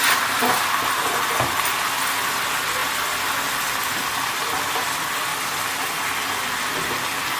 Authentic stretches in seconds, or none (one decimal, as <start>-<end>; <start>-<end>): 0.0-2.8; 4.0-7.4